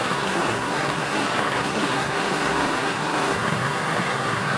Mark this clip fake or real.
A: fake